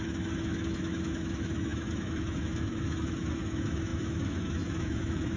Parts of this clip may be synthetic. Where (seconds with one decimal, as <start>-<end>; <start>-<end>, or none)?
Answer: 0.0-5.4